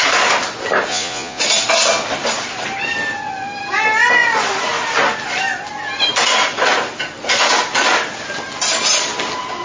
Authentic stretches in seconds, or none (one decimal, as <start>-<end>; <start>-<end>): 0.0-0.9; 1.4-9.6